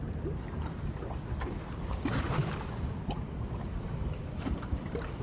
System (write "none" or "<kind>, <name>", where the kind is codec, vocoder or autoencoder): vocoder, BigVGAN v2